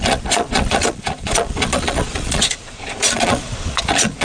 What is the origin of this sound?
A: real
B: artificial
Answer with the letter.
B